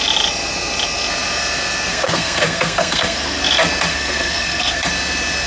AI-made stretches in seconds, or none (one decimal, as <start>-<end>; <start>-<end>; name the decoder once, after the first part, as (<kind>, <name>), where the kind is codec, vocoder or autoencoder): 1.9-3.4 (codec, SNAC); 3.9-4.9